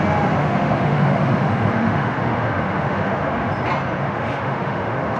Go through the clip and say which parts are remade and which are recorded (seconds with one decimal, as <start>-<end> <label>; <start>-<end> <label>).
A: 0.0-0.4 recorded; 0.4-3.5 remade; 3.5-4.0 recorded; 4.0-5.2 remade